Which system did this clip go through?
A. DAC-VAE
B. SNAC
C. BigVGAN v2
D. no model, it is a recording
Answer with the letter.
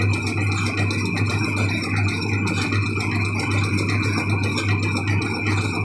D